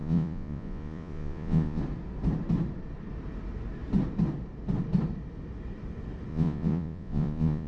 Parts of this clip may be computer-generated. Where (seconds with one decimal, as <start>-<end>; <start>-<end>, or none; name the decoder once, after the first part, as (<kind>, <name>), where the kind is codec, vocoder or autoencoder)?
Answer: 0.0-1.8 (vocoder, Vocos); 6.3-7.7